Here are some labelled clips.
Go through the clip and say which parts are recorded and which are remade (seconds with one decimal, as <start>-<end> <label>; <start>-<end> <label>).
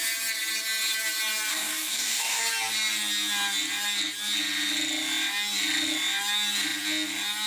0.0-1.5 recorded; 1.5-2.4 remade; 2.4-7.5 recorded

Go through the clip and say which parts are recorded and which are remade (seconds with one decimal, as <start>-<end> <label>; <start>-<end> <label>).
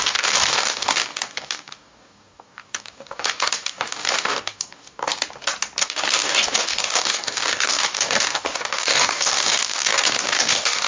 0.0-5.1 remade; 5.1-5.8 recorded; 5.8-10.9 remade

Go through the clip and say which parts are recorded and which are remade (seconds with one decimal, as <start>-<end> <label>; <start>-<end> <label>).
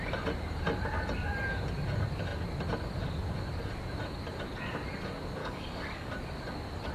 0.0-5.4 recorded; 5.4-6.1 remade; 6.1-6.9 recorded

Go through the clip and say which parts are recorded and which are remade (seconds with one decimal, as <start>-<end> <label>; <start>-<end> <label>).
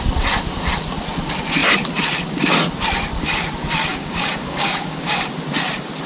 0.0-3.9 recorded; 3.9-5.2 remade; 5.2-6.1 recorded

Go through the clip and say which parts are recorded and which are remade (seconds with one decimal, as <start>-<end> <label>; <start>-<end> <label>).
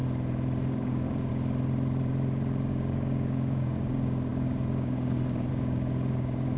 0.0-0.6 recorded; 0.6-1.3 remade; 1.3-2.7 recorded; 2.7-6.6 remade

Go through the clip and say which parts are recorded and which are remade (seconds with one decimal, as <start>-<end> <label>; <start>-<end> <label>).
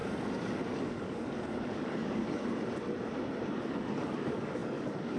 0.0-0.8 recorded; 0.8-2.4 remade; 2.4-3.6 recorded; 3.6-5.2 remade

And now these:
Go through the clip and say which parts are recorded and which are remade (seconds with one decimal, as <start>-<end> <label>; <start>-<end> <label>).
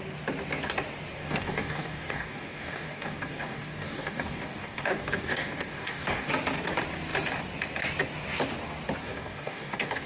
0.0-1.2 recorded; 1.2-6.3 remade; 6.3-9.0 recorded; 9.0-10.1 remade